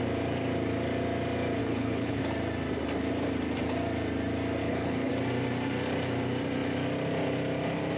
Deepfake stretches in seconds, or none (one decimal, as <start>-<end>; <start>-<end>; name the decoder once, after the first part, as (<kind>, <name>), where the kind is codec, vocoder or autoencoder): 1.6-2.2 (codec, HILCodec); 4.6-5.1